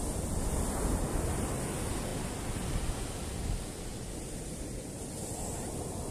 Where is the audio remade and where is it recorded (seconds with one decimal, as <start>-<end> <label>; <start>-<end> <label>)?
0.0-6.1 recorded